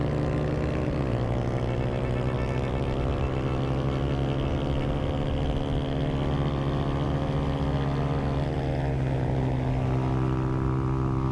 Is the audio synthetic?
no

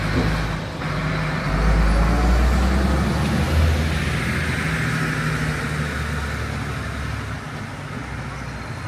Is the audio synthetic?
no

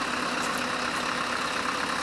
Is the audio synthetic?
no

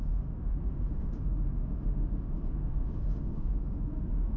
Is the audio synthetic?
yes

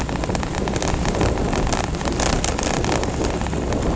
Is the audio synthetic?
no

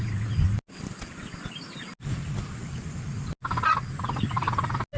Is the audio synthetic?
no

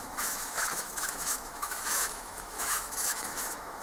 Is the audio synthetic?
yes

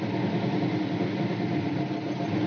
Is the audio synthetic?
no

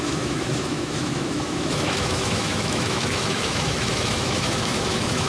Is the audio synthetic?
yes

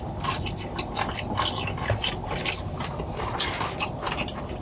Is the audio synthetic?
no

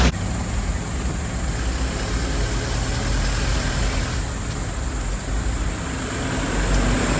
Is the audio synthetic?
no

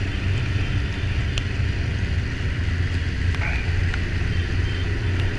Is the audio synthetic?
no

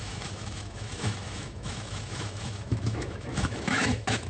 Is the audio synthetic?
yes